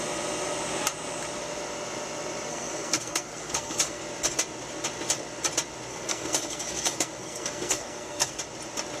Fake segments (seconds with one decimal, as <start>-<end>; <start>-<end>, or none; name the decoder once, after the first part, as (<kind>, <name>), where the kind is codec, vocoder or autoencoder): 2.5-4.0 (codec, SNAC); 5.9-8.4